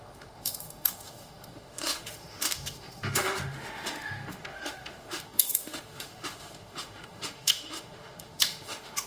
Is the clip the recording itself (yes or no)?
no